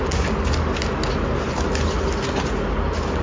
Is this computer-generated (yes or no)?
no